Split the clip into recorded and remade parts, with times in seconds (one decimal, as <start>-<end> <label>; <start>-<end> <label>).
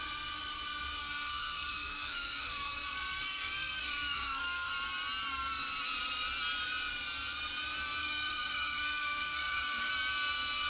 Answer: 0.0-1.0 recorded; 1.0-4.7 remade; 4.7-8.0 recorded; 8.0-9.9 remade; 9.9-10.7 recorded